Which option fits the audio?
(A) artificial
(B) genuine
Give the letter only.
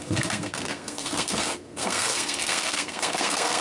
A